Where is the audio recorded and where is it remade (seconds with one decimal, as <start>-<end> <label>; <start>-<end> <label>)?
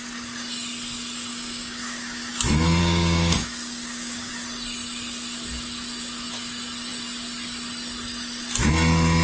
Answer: 0.0-1.3 recorded; 1.3-2.3 remade; 2.3-2.8 recorded; 2.8-4.3 remade; 4.3-9.2 recorded